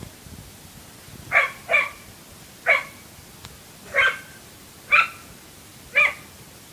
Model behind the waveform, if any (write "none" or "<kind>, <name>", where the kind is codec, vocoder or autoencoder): none